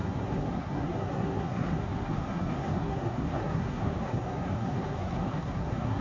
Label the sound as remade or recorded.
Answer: remade